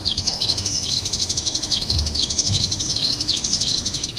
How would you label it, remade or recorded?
remade